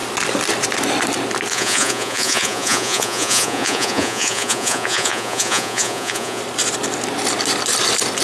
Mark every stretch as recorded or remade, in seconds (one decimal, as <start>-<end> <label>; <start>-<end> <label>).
0.0-1.5 recorded; 1.5-6.4 remade; 6.4-8.2 recorded